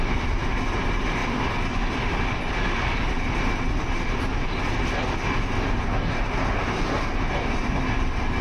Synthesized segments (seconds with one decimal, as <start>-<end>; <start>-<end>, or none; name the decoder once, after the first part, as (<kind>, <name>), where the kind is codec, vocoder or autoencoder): none